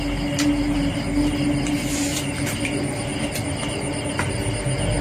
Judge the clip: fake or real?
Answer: real